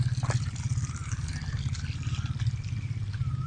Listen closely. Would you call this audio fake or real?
real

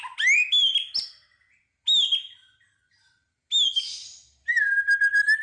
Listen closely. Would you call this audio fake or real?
real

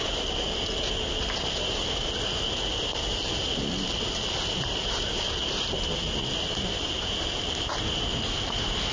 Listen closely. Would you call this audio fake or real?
real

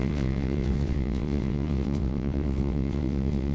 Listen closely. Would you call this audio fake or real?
fake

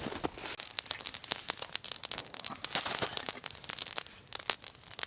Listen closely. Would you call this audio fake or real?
real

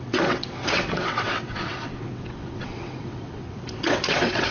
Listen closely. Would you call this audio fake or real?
fake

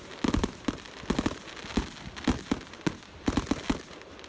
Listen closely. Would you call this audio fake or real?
real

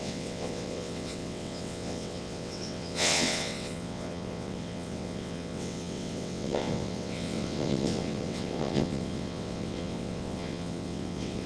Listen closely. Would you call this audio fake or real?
fake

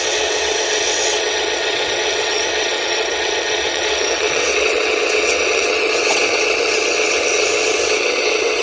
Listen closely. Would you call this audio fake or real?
fake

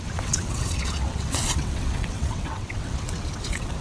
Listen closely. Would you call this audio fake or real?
fake